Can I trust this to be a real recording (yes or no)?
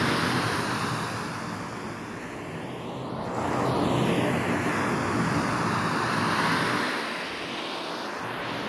yes